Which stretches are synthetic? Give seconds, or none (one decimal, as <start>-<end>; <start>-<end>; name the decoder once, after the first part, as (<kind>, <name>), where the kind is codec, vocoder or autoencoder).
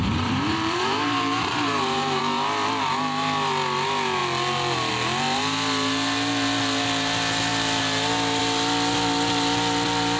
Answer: 0.0-2.2 (vocoder, BigVGAN v2)